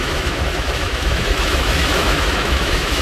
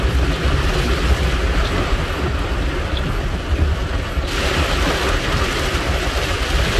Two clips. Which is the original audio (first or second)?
second